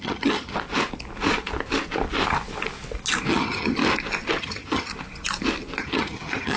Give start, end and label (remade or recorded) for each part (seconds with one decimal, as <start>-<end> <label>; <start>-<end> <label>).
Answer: 0.0-0.5 remade; 0.5-3.3 recorded; 3.3-3.8 remade; 3.8-4.4 recorded; 4.4-4.9 remade; 4.9-5.8 recorded; 5.8-6.6 remade